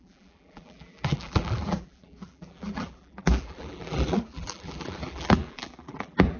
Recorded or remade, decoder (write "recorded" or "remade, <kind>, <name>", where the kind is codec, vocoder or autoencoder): remade, vocoder, BigVGAN v2